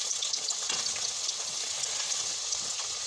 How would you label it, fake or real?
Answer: fake